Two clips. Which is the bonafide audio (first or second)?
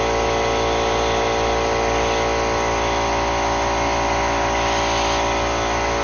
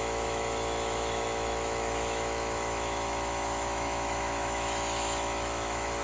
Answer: first